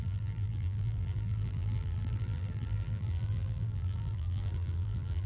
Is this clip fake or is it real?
fake